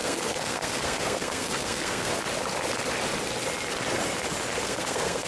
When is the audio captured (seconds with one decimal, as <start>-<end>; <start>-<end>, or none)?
2.1-4.6